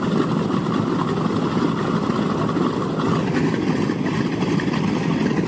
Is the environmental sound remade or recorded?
recorded